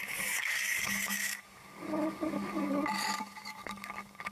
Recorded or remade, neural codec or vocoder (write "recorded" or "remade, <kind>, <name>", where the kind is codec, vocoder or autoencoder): remade, codec, DAC